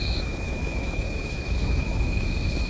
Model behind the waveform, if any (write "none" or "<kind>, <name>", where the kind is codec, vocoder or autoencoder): autoencoder, DAC-VAE